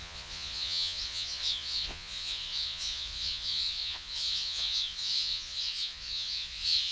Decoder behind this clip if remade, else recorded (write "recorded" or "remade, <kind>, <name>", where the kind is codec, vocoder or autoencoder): remade, vocoder, Vocos